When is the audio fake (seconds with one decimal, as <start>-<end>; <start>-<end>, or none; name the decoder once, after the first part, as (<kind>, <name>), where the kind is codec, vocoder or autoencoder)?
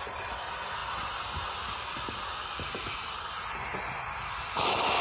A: none